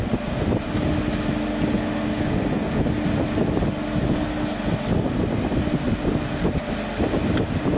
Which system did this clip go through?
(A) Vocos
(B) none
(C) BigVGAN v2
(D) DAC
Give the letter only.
B